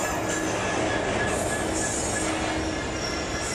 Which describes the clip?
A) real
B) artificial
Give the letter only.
A